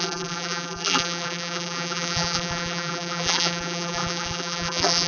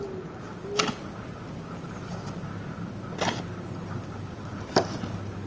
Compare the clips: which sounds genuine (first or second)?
second